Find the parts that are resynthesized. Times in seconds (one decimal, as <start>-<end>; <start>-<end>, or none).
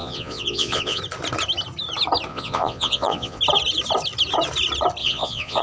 0.0-1.0; 2.3-3.4; 5.0-5.6